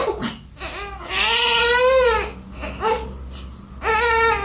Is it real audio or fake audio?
real